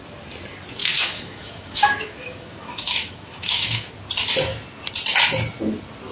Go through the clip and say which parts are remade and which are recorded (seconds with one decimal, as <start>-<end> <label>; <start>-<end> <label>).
0.0-0.8 recorded; 0.8-3.9 remade; 3.9-6.1 recorded